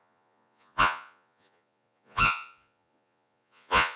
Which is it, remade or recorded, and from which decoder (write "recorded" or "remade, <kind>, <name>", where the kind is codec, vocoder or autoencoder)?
remade, vocoder, Vocos